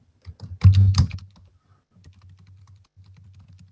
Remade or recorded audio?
recorded